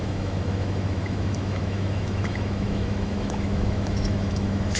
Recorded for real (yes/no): no